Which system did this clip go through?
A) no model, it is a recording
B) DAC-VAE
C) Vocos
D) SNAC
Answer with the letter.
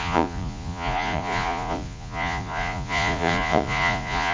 C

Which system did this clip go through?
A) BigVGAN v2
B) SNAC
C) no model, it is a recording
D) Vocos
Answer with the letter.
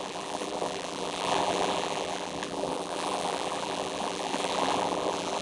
A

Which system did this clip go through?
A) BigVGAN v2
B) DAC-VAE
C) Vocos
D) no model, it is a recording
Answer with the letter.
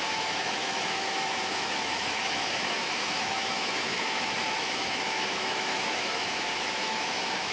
B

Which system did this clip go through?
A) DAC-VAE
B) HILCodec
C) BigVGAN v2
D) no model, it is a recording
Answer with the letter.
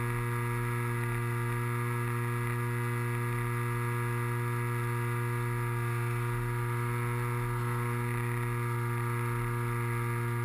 D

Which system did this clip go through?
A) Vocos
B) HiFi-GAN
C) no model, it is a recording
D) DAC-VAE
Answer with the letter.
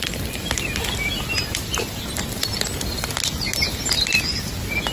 C